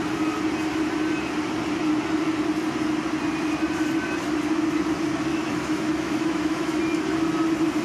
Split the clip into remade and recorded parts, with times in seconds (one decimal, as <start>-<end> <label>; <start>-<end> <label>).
0.0-5.3 recorded; 5.3-6.8 remade; 6.8-7.8 recorded